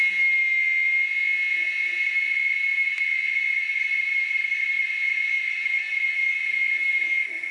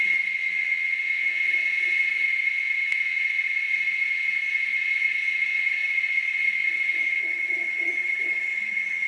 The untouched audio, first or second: first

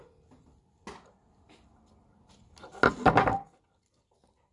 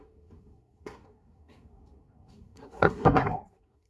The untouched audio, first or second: first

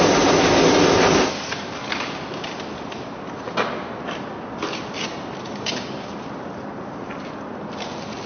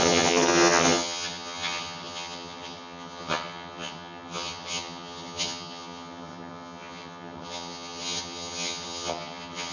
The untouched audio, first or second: first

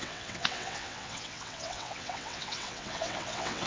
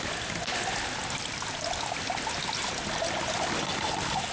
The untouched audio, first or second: second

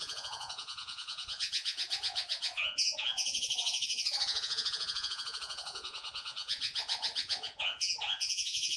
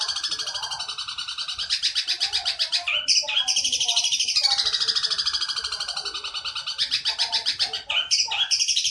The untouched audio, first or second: second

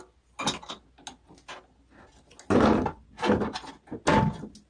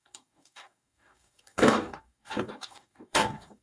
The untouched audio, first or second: first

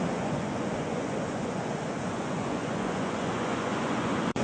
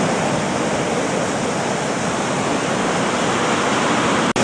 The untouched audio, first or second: second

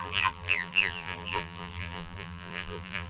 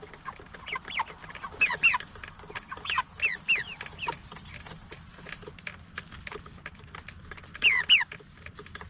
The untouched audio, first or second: second